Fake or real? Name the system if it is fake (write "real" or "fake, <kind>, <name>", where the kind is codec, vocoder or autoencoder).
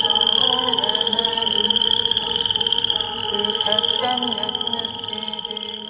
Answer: real